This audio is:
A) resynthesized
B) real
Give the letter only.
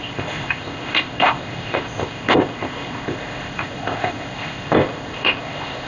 A